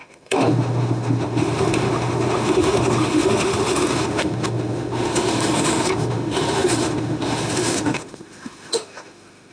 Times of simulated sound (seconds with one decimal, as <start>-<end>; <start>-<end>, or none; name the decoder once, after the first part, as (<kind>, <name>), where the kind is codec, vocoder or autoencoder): 0.0-9.5 (autoencoder, DAC-VAE)